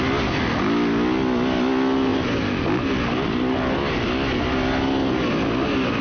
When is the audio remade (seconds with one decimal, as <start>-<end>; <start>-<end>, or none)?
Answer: none